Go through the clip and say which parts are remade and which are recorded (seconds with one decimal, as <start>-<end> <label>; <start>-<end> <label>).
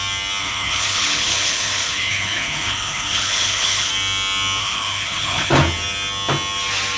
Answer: 0.0-0.4 recorded; 0.4-3.9 remade; 3.9-4.6 recorded; 4.6-5.6 remade; 5.6-7.0 recorded